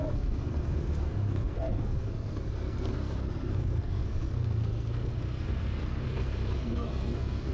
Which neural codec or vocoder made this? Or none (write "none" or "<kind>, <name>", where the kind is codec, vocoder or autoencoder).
codec, SNAC